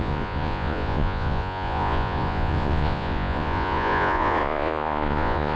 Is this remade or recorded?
remade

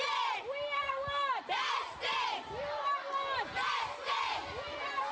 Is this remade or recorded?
recorded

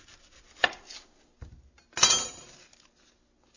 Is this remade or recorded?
recorded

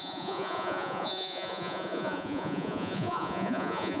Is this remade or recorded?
remade